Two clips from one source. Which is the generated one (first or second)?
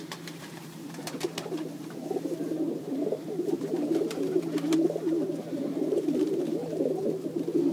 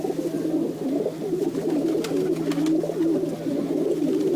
first